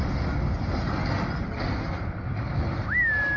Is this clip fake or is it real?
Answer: real